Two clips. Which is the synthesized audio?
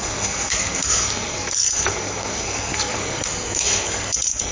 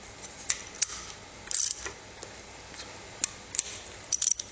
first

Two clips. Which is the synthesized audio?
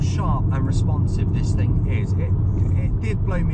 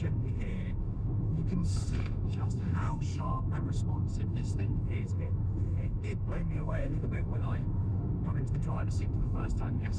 second